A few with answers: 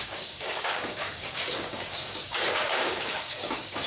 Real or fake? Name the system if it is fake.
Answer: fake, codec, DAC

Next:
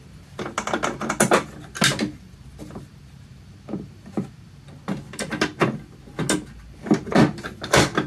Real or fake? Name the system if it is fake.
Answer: real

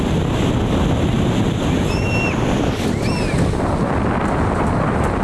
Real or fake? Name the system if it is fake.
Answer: real